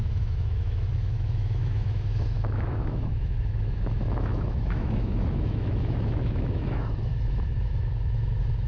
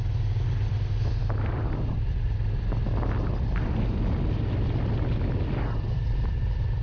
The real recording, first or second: second